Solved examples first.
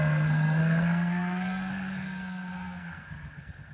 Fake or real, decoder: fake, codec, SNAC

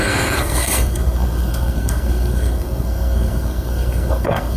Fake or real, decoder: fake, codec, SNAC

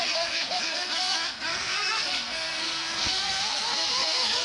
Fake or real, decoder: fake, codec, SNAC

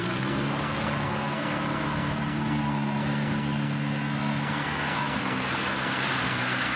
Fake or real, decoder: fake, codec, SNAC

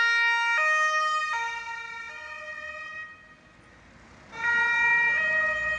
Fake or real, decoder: real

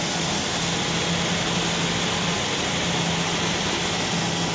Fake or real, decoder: real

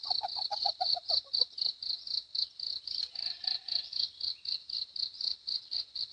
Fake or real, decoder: real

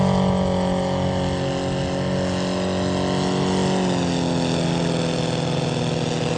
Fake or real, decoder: real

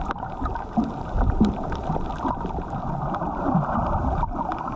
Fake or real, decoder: real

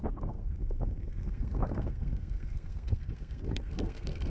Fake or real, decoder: fake, codec, SNAC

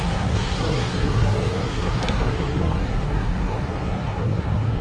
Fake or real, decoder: fake, codec, SNAC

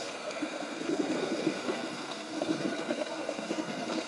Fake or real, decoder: fake, codec, SNAC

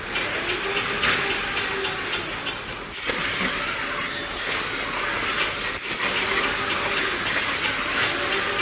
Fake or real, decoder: real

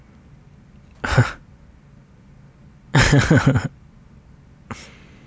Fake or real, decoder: real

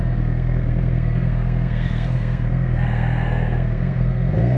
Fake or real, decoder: fake, codec, SNAC